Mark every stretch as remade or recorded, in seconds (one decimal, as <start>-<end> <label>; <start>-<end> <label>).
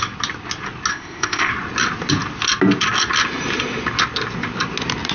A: 0.0-0.9 recorded; 0.9-1.5 remade; 1.5-5.1 recorded